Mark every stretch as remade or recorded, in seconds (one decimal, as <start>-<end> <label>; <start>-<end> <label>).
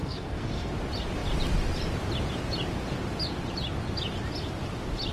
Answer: 0.0-0.7 remade; 0.7-5.1 recorded